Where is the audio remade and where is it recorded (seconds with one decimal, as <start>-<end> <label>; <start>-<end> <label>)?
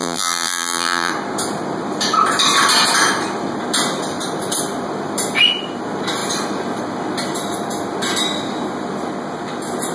0.0-1.1 remade; 1.1-9.9 recorded